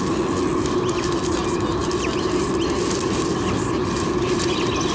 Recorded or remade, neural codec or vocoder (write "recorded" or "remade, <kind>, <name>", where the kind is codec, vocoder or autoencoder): recorded